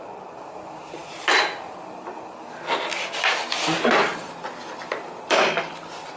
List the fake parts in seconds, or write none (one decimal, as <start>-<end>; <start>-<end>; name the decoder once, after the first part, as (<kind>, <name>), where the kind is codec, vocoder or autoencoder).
none